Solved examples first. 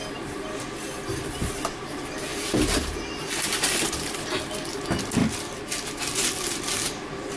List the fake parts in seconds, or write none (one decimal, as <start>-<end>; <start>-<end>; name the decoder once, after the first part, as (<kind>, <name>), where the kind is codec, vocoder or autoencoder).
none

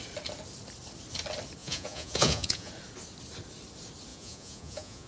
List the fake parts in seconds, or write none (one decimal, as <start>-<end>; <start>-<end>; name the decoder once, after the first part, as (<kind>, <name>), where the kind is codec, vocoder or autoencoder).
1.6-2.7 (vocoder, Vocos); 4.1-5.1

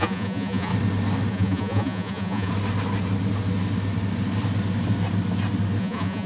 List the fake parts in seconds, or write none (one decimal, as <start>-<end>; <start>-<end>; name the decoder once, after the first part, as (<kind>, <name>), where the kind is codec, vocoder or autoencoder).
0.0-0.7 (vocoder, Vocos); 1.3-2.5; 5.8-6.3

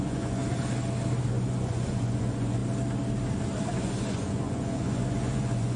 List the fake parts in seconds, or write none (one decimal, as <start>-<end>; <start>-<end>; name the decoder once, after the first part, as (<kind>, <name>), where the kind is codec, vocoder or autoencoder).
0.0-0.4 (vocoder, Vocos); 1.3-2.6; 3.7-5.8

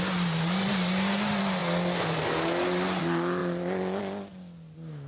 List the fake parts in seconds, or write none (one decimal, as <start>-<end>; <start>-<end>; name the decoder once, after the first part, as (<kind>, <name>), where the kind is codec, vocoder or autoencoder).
none

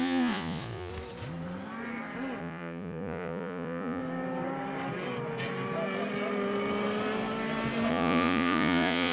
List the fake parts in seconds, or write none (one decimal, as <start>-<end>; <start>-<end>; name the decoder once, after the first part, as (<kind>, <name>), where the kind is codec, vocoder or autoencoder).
0.0-0.9 (vocoder, Vocos); 2.4-4.0; 7.9-9.1